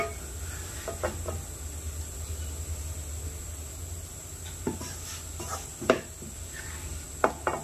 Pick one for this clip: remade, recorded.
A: recorded